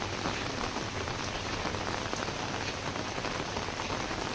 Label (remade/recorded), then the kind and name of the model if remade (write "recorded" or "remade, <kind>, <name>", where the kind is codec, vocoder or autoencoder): recorded